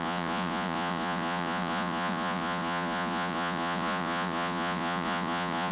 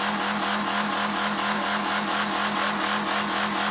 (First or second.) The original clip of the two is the second